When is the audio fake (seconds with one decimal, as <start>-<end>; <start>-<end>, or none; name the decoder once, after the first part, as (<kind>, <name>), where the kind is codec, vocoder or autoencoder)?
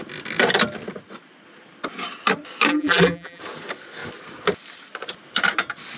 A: 2.7-3.4 (vocoder, BigVGAN v2)